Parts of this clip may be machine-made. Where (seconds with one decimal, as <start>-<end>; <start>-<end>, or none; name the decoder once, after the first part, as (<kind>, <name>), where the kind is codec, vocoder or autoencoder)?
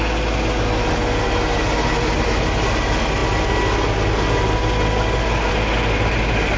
none